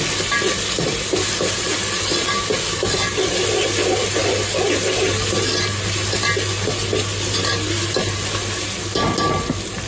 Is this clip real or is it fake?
real